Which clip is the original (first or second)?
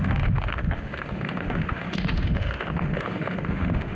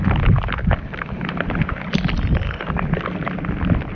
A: second